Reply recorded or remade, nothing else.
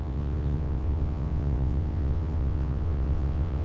remade